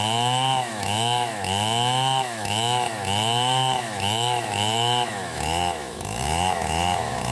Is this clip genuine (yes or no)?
no